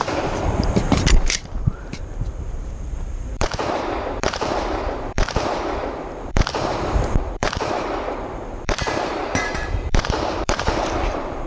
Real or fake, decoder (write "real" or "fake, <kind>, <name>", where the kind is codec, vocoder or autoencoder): fake, vocoder, BigVGAN v2